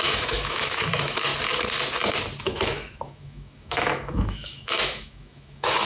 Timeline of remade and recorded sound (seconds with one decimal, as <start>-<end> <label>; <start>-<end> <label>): 0.0-1.3 remade; 1.3-2.4 recorded; 2.4-5.8 remade